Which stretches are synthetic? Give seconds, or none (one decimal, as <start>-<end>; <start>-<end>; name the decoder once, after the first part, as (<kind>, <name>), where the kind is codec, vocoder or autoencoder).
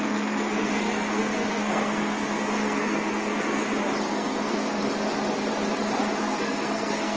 0.0-3.6 (codec, SNAC); 4.1-4.8; 6.0-7.2